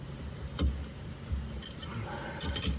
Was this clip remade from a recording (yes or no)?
no